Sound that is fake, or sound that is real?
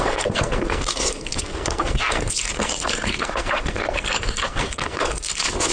fake